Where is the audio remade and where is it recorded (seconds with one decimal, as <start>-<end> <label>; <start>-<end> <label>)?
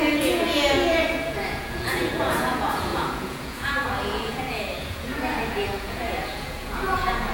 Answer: 0.0-7.3 remade